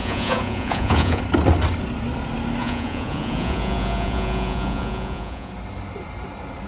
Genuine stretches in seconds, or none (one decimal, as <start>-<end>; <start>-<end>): 1.2-2.6; 5.5-6.7